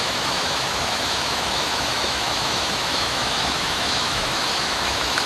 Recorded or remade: remade